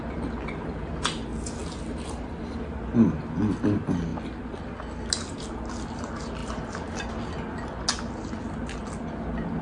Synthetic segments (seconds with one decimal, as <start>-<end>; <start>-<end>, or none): none